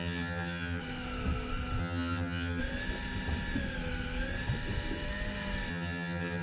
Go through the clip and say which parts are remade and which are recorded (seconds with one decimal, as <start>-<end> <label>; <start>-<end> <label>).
0.0-0.8 remade; 0.8-1.8 recorded; 1.8-2.6 remade; 2.6-5.7 recorded; 5.7-6.4 remade